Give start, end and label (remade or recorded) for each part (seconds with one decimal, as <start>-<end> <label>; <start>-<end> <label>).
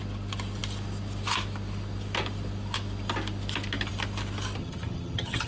0.0-4.6 recorded; 4.6-5.5 remade